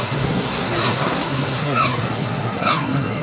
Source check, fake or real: fake